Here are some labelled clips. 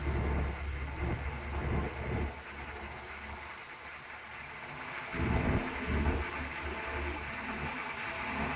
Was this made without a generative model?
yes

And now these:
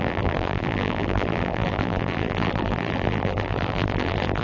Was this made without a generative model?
no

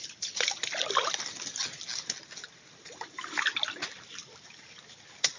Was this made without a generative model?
yes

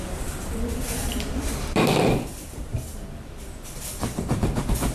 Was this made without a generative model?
no